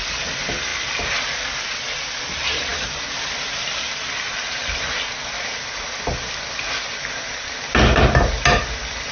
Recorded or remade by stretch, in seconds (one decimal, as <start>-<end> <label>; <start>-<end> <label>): 0.0-9.1 recorded